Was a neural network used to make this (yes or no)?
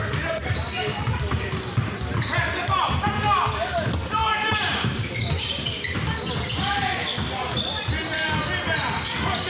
no